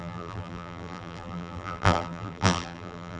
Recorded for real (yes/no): no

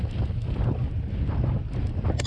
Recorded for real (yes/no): yes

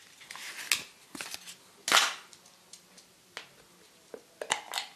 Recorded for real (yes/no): yes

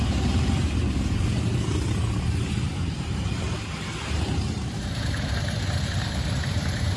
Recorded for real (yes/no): no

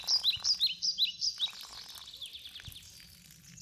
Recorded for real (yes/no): yes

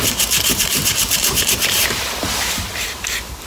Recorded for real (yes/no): no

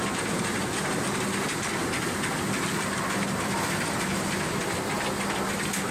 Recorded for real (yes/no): yes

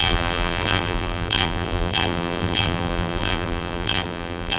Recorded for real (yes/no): no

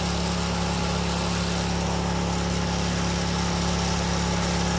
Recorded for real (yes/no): yes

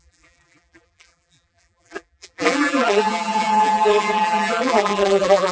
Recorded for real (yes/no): no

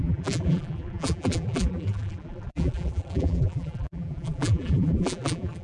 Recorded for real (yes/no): no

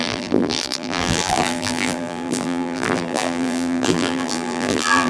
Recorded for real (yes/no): no